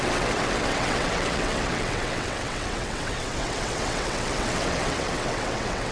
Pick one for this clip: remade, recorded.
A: remade